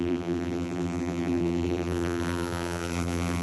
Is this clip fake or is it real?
fake